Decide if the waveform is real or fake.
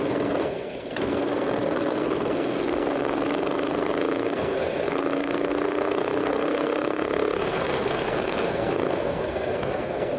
fake